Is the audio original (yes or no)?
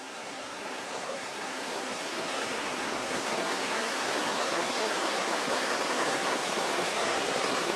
no